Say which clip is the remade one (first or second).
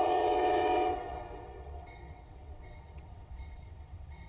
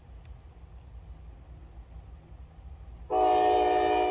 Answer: first